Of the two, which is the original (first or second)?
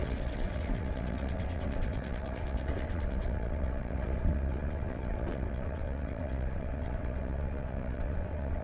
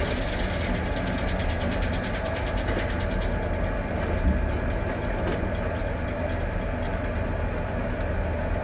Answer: second